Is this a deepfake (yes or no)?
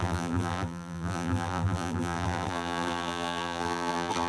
yes